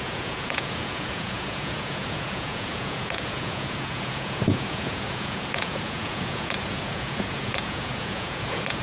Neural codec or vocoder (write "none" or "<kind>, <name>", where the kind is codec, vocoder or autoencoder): vocoder, Vocos